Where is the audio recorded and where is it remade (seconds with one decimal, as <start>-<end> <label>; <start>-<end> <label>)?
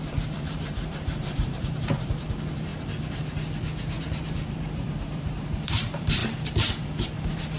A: 0.0-2.7 remade; 2.7-4.0 recorded; 4.0-6.2 remade; 6.2-6.8 recorded; 6.8-7.6 remade